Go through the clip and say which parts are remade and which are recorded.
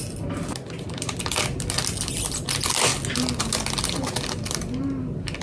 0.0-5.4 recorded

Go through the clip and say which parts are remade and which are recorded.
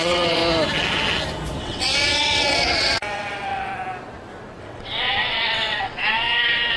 0.0-0.4 remade; 0.4-1.6 recorded; 1.6-3.7 remade; 3.7-4.6 recorded; 4.6-6.8 remade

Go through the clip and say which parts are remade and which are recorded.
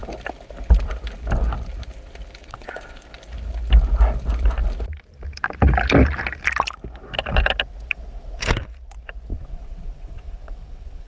0.0-2.4 recorded; 2.4-3.0 remade; 3.0-9.3 recorded; 9.3-11.1 remade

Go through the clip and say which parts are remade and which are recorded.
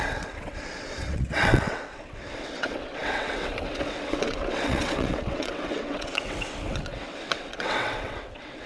0.0-8.7 remade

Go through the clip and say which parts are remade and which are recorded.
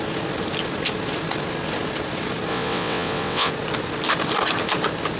0.0-2.5 recorded; 2.5-3.5 remade; 3.5-5.2 recorded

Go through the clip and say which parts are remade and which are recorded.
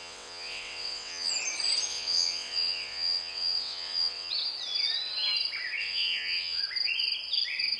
0.0-1.3 remade; 1.3-1.9 recorded; 1.9-4.3 remade; 4.3-5.8 recorded; 5.8-6.6 remade; 6.6-7.8 recorded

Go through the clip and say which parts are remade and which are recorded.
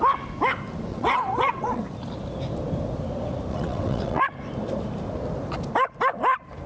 0.0-0.9 recorded; 0.9-1.8 remade; 1.8-3.5 recorded; 3.5-4.2 remade; 4.2-6.7 recorded